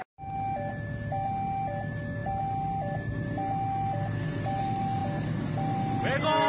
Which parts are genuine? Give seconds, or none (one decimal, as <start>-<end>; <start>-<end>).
0.0-6.5